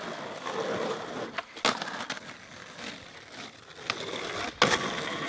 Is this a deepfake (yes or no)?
no